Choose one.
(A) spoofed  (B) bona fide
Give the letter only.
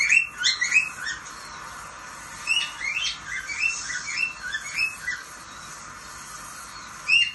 B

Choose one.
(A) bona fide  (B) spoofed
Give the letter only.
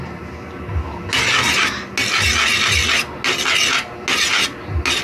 A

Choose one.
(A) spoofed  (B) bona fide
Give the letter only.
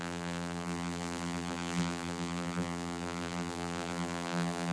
A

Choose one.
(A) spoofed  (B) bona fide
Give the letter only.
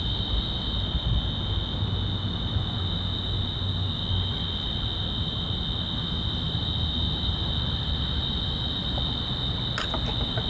B